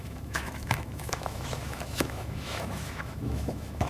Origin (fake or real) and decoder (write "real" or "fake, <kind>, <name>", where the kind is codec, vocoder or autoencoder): fake, autoencoder, DAC-VAE